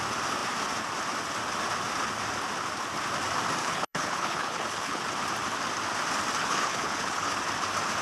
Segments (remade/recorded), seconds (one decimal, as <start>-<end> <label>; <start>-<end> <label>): 0.0-3.6 recorded; 3.6-5.0 remade; 5.0-6.4 recorded; 6.4-7.3 remade; 7.3-8.0 recorded